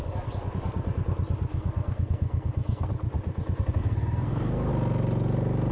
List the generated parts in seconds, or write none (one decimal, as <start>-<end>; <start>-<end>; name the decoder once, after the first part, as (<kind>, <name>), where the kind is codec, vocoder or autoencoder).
1.5-2.9 (codec, SNAC); 3.8-4.7